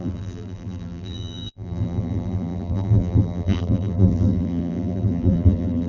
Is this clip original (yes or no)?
no